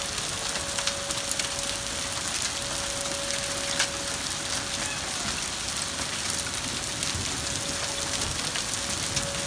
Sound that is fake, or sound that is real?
real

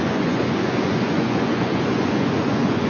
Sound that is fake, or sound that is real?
fake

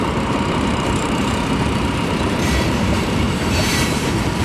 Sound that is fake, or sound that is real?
fake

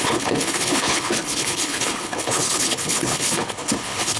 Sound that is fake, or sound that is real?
fake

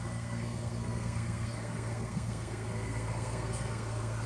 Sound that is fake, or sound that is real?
fake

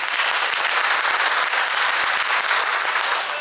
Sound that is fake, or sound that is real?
real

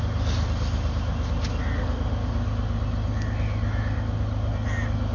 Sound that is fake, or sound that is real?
real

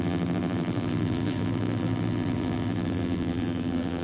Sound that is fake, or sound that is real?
fake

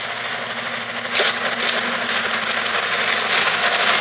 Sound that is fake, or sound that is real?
real